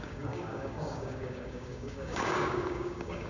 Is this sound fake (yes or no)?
yes